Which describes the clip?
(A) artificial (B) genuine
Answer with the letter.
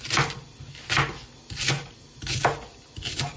B